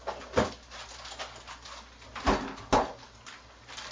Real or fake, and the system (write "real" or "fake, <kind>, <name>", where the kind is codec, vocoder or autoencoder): real